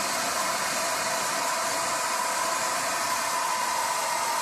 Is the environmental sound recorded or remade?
recorded